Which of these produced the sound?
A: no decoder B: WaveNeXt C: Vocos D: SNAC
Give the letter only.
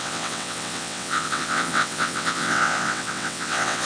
B